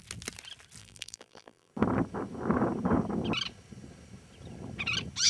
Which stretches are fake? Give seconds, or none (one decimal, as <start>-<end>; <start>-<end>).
0.8-1.7